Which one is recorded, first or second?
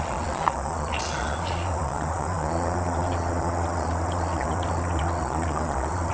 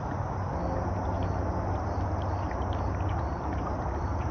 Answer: second